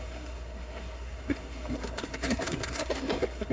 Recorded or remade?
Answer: remade